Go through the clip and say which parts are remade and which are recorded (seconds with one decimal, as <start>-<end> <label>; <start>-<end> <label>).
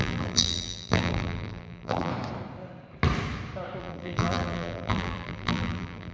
0.0-2.1 remade; 2.1-3.8 recorded; 3.8-6.1 remade